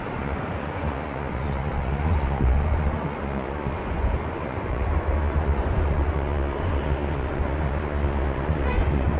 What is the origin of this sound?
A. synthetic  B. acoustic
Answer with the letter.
A